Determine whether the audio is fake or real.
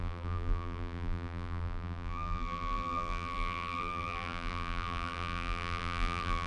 fake